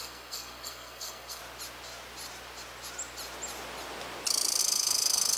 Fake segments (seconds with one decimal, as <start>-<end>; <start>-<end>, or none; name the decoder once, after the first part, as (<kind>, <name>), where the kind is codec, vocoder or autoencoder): 0.0-1.4 (codec, SNAC); 4.6-5.4